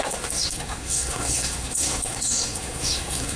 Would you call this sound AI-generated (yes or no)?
yes